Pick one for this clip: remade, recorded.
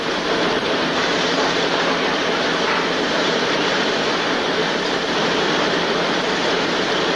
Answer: remade